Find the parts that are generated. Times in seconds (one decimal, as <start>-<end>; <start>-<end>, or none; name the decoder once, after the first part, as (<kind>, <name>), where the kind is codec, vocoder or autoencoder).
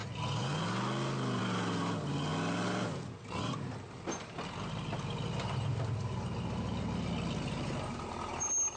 none